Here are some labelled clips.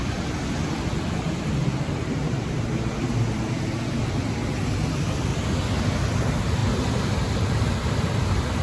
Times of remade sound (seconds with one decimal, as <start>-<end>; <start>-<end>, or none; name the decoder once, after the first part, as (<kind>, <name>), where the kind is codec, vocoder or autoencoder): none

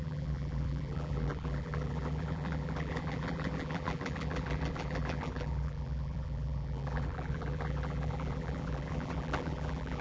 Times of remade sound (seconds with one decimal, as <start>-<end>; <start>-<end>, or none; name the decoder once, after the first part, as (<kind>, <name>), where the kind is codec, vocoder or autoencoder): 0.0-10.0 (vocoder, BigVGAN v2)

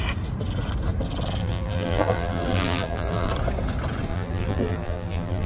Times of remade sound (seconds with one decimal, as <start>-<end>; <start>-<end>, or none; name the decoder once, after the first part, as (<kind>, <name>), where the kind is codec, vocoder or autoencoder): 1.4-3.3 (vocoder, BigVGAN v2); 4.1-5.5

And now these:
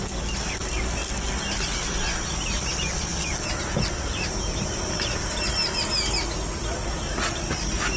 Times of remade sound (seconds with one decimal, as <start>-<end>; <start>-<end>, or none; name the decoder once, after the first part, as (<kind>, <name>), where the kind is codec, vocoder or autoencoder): 3.1-5.3 (vocoder, BigVGAN v2)

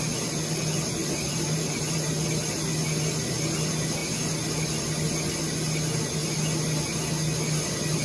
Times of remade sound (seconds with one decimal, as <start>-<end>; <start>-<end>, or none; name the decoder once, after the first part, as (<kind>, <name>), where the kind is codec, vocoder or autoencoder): 1.0-2.1 (vocoder, BigVGAN v2)

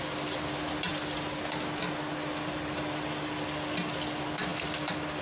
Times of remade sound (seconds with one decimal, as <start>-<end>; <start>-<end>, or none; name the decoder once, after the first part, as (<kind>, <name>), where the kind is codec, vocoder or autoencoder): none

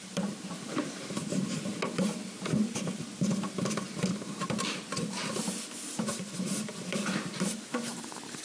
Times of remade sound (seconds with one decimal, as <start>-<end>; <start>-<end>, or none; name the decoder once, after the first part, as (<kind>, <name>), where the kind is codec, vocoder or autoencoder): 0.0-1.7 (vocoder, BigVGAN v2); 5.9-8.4

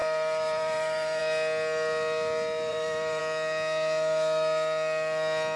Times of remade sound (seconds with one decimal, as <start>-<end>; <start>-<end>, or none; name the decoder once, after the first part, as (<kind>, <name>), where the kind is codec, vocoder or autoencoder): 0.0-1.2 (vocoder, BigVGAN v2); 2.7-3.2